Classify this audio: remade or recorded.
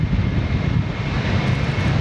recorded